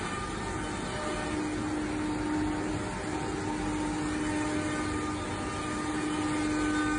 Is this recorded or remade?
recorded